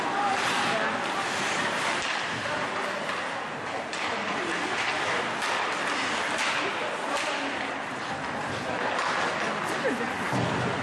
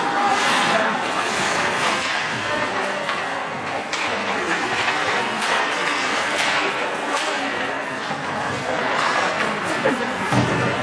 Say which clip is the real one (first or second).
first